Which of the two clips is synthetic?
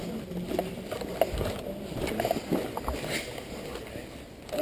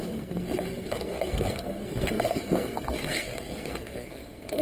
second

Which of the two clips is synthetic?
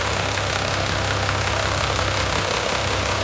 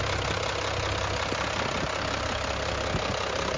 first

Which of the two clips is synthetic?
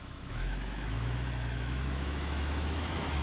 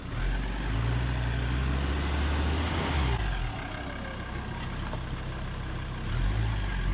first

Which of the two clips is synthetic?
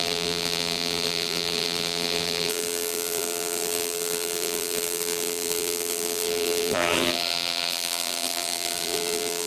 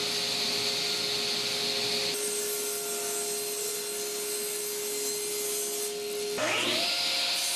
first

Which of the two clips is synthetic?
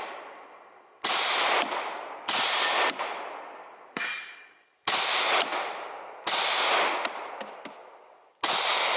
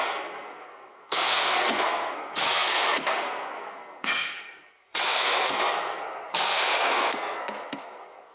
second